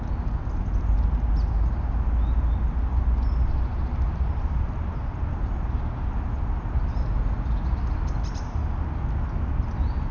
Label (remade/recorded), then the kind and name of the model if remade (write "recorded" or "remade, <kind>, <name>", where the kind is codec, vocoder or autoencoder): recorded